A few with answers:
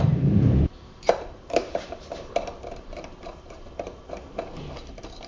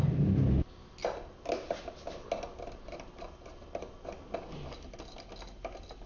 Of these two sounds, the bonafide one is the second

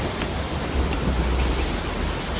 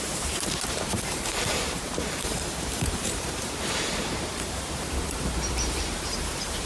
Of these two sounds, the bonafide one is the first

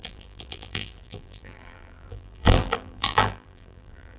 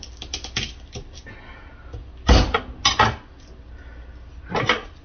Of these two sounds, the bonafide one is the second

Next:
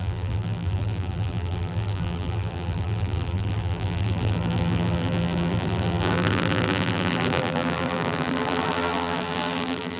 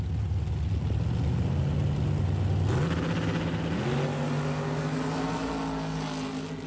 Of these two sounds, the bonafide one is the second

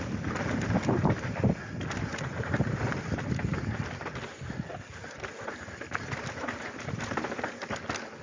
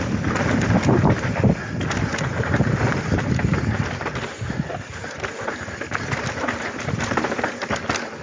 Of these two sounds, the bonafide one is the second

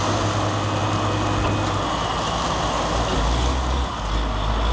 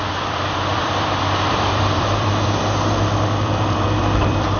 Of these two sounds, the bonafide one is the first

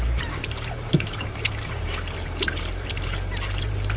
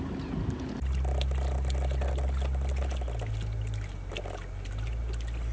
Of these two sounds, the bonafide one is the second